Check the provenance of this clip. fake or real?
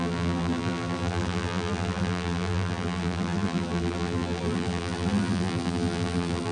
fake